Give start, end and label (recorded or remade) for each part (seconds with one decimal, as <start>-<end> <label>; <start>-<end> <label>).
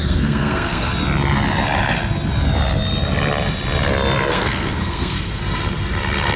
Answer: 0.0-0.9 remade; 0.9-4.3 recorded; 4.3-5.4 remade; 5.4-6.4 recorded